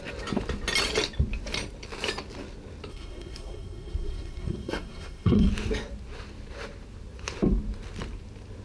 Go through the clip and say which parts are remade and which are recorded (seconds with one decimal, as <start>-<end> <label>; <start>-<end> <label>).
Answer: 0.0-2.9 recorded; 2.9-5.5 remade; 5.5-8.6 recorded